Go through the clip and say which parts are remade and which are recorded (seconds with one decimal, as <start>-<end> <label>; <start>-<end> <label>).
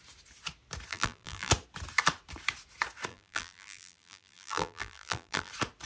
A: 0.0-0.9 recorded; 0.9-1.5 remade; 1.5-3.1 recorded; 3.1-5.5 remade; 5.5-5.9 recorded